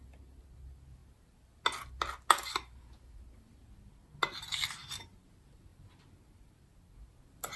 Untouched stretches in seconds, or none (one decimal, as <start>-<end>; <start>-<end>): 0.0-7.6